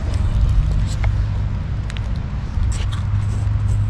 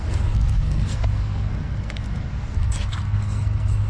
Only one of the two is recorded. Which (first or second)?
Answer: first